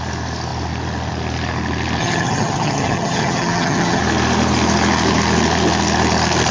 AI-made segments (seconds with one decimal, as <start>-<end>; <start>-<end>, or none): 2.0-4.0